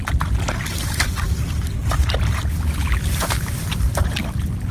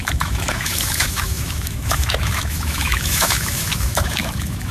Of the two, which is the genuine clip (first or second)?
first